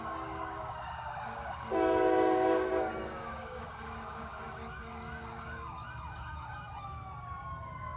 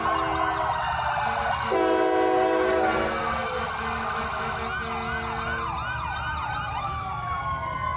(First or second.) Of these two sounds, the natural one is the second